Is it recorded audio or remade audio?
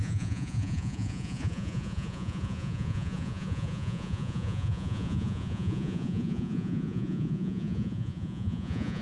remade